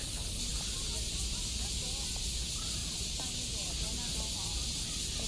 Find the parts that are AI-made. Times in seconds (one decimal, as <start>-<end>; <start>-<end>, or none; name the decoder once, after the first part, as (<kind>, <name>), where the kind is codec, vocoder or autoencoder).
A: none